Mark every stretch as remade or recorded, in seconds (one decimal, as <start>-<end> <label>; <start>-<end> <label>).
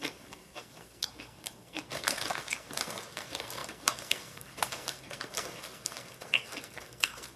0.0-7.4 remade